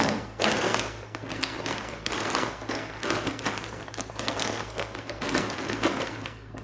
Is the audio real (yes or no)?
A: no